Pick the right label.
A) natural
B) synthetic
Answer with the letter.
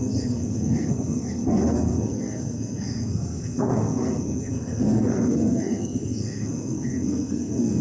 B